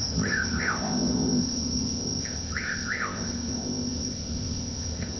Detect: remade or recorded remade